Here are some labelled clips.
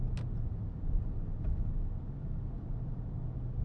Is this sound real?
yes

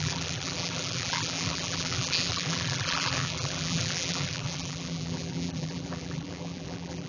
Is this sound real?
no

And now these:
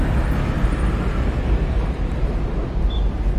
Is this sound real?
yes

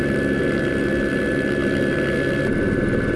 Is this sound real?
yes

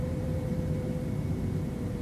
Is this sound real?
no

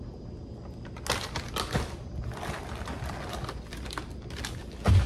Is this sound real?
yes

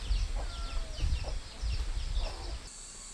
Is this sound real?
yes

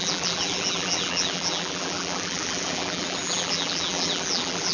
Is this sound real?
no